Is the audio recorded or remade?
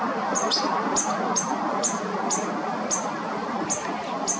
recorded